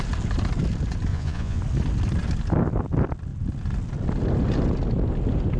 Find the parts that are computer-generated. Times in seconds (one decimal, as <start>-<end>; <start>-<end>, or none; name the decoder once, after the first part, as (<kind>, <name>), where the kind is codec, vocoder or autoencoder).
1.1-1.6 (vocoder, Vocos)